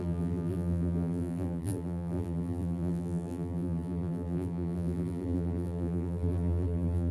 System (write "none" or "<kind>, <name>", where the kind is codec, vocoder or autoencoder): vocoder, BigVGAN v2